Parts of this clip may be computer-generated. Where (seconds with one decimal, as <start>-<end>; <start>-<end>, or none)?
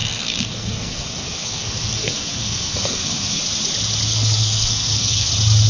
0.0-3.4; 4.1-5.3